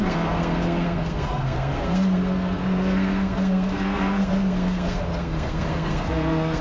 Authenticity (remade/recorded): remade